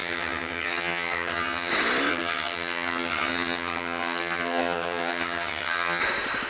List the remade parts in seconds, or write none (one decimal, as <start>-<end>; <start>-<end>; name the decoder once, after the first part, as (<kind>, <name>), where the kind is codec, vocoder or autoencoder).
0.0-1.7 (vocoder, HiFi-GAN); 2.1-6.0